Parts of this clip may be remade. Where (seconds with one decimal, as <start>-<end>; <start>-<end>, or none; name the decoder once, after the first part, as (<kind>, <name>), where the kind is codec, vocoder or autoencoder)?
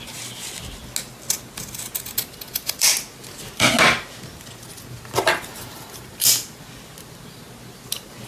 none